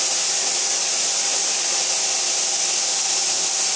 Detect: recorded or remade recorded